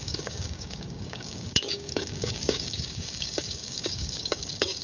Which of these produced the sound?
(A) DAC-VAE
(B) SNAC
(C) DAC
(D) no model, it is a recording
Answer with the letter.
C